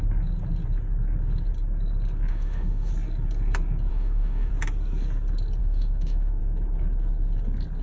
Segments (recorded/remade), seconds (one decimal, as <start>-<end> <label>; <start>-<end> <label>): 0.0-2.3 recorded; 2.3-2.9 remade; 2.9-3.9 recorded; 3.9-4.5 remade; 4.5-5.6 recorded; 5.6-6.4 remade; 6.4-7.8 recorded